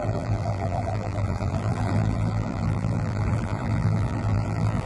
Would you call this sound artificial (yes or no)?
yes